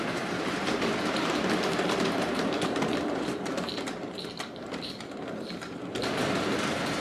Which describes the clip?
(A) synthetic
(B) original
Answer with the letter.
A